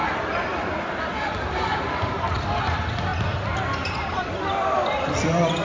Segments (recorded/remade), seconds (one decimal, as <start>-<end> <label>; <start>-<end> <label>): 0.0-3.1 remade; 3.1-3.9 recorded; 3.9-5.6 remade